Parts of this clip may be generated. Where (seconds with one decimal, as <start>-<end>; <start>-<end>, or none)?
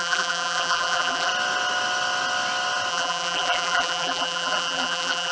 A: 0.0-1.3; 2.9-5.3